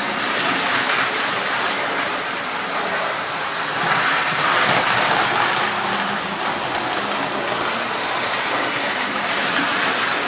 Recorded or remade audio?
recorded